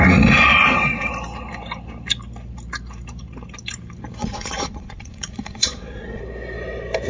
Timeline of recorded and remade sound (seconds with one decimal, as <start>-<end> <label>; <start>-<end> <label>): 0.0-4.2 recorded; 4.2-6.2 remade; 6.2-7.1 recorded